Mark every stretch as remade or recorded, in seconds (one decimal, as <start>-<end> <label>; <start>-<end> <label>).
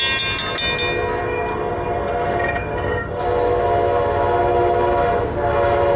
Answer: 0.0-1.2 recorded; 1.2-3.2 remade; 3.2-6.0 recorded